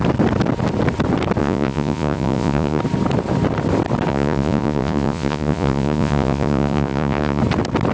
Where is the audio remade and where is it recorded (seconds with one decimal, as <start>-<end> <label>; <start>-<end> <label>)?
0.0-1.4 recorded; 1.4-2.8 remade; 2.8-4.1 recorded; 4.1-7.4 remade; 7.4-7.9 recorded